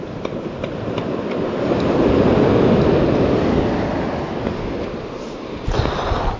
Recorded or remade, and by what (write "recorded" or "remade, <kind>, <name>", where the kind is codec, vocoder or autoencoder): recorded